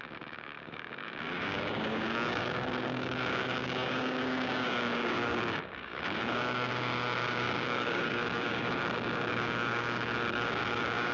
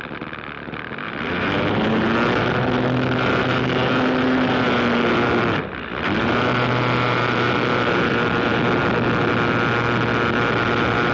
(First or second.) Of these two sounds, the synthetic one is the first